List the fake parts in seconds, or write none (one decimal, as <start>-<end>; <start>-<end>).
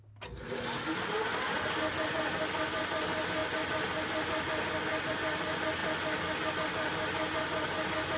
none